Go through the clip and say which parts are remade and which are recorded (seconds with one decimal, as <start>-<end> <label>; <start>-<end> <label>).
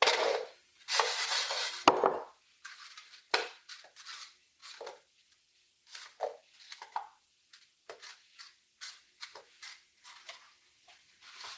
0.0-11.6 recorded